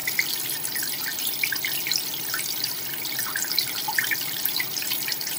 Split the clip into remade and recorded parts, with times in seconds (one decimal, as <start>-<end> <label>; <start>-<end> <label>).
0.0-5.4 recorded